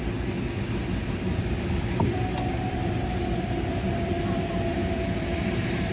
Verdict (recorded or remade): recorded